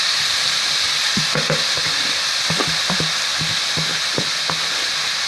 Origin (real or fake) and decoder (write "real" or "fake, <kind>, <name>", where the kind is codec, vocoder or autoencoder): real